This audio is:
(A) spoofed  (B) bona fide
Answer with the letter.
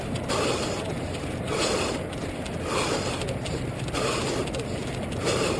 B